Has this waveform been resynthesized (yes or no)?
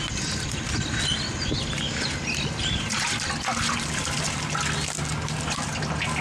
no